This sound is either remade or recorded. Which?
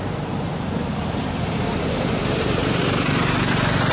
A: remade